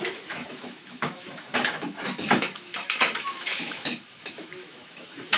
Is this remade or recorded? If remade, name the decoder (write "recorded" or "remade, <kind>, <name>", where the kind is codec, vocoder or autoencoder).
remade, autoencoder, DAC-VAE